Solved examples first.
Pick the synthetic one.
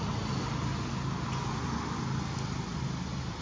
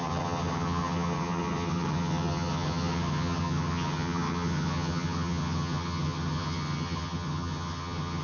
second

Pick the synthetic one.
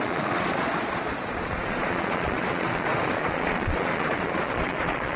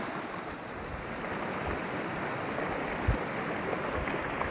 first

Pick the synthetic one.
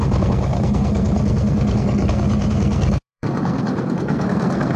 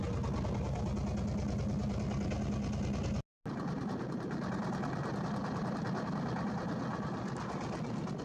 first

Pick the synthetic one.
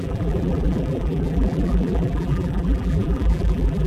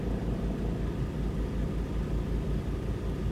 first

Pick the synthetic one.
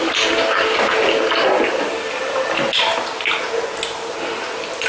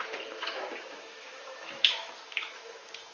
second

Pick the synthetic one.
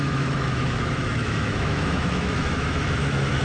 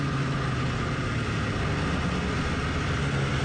first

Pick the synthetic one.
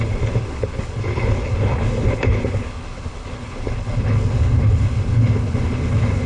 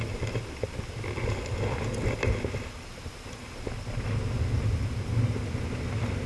first